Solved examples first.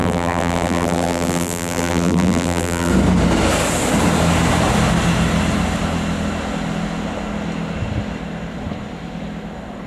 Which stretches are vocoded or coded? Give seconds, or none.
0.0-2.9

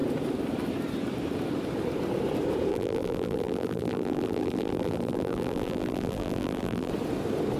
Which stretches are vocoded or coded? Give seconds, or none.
2.7-6.9

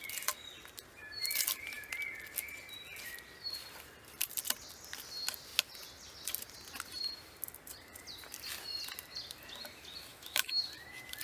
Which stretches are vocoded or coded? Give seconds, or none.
10.1-10.6

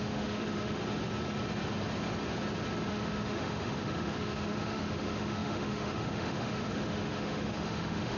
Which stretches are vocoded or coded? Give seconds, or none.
0.0-0.8; 2.9-8.2